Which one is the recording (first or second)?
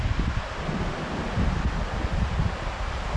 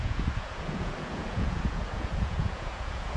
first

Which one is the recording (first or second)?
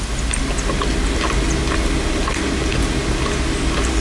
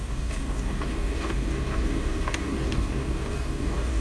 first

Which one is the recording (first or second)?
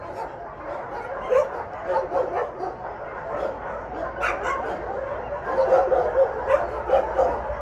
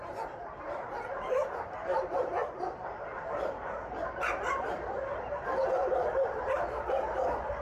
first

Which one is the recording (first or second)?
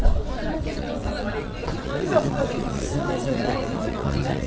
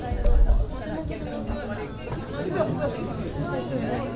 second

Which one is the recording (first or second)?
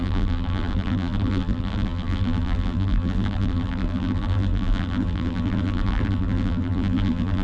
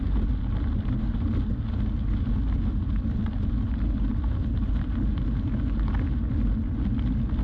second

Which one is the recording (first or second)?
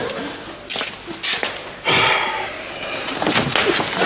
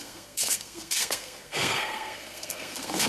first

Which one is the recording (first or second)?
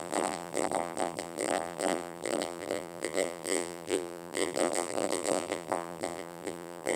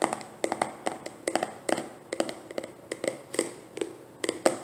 second